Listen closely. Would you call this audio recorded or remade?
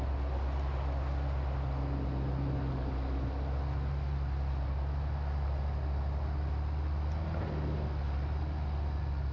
recorded